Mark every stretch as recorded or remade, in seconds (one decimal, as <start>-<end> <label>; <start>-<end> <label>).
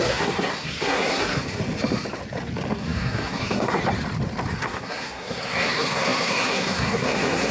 0.0-1.6 remade; 1.6-2.7 recorded; 2.7-3.8 remade; 3.8-4.6 recorded; 4.6-7.5 remade